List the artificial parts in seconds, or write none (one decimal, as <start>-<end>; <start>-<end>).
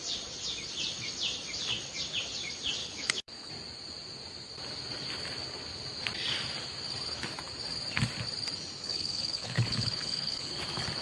2.8-3.5; 8.8-10.5